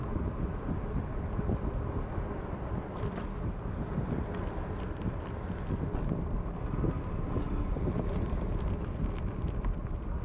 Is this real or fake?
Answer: real